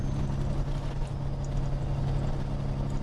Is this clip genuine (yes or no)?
yes